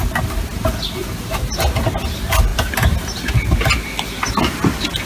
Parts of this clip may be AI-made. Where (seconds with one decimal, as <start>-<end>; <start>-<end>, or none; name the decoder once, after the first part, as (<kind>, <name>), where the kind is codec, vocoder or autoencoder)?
0.0-1.0 (vocoder, BigVGAN v2); 1.5-2.5